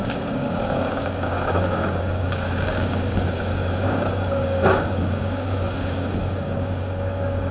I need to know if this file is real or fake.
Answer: fake